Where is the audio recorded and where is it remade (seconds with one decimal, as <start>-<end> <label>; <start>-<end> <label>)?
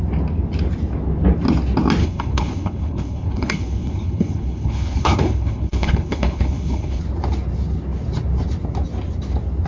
0.0-2.0 recorded; 2.0-7.0 remade; 7.0-9.7 recorded